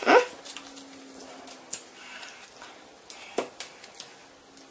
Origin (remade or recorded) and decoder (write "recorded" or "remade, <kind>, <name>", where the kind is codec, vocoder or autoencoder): recorded